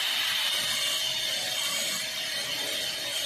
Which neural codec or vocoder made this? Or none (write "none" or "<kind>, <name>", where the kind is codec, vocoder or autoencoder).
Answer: none